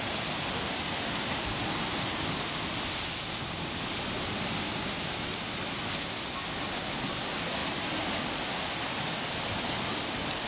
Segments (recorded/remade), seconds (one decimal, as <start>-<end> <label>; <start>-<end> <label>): 0.0-10.5 recorded